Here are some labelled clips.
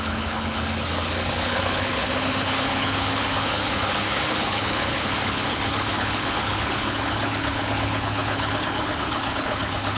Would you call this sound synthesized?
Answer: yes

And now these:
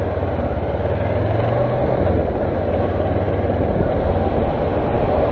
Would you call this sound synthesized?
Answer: no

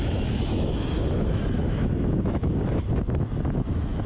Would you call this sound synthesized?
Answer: yes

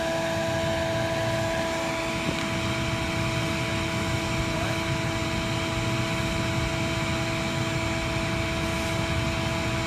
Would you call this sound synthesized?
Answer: no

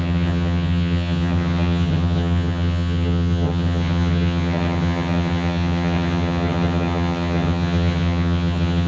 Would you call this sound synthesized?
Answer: yes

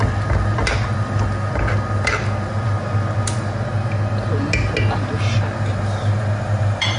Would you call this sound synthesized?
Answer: no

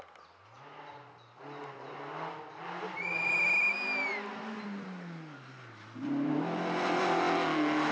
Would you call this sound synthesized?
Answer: no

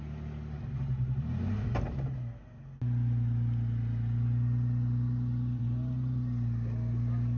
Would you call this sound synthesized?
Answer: no